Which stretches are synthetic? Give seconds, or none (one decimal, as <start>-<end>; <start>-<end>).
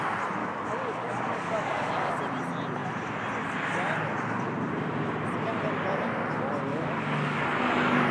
0.4-2.1; 6.7-7.4